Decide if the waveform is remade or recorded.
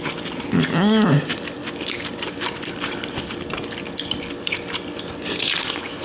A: recorded